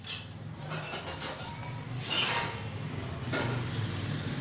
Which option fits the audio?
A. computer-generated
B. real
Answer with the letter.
B